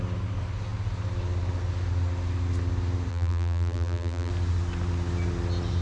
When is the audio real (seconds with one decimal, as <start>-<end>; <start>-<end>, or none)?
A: 0.0-3.1; 4.3-5.8